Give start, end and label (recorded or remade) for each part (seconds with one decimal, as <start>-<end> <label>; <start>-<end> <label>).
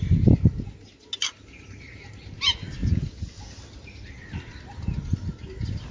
0.0-5.9 recorded